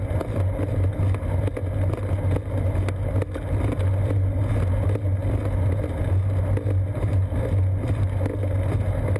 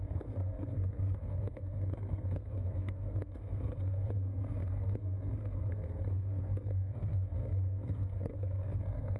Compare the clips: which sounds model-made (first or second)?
second